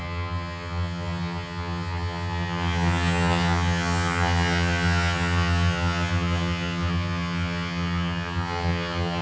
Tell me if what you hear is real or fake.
fake